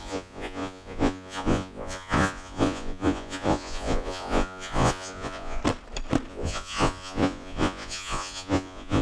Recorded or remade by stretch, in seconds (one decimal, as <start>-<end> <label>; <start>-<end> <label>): 0.0-5.6 remade; 5.6-6.3 recorded; 6.3-9.0 remade